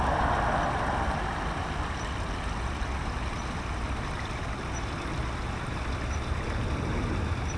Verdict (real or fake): real